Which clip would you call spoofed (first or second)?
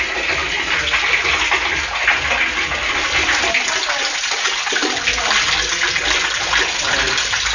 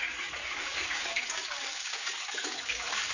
second